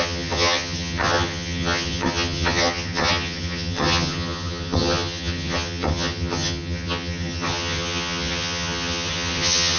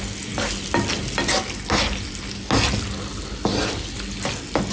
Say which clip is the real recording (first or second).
second